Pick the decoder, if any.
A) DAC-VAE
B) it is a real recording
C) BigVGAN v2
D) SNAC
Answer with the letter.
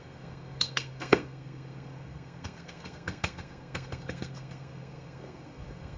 D